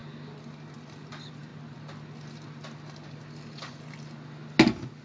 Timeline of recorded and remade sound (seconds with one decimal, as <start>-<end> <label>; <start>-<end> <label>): 0.0-5.0 recorded